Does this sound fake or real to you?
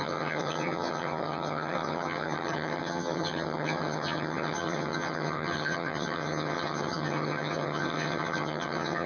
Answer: fake